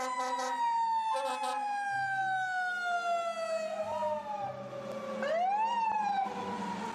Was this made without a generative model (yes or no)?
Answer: yes